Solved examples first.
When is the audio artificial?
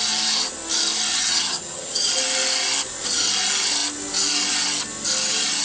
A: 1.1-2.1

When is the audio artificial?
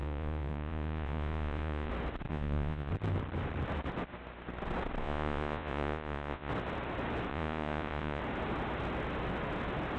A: 0.0-1.9; 2.3-2.9; 5.0-6.5; 7.3-8.2